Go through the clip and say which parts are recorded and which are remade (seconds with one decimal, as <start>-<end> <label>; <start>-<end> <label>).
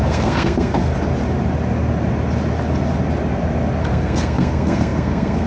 0.0-0.9 remade; 0.9-3.8 recorded; 3.8-5.5 remade